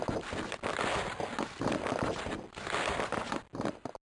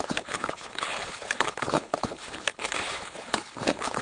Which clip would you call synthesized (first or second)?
second